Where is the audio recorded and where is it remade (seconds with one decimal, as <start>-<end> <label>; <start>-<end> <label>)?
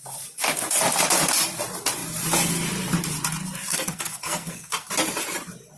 0.0-3.7 recorded; 3.7-4.9 remade; 4.9-5.8 recorded